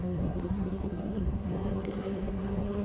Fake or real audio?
fake